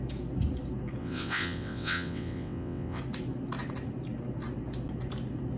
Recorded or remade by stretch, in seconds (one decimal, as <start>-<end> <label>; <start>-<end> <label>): 0.0-1.0 recorded; 1.0-3.0 remade; 3.0-5.6 recorded